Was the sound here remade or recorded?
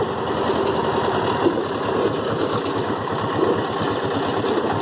recorded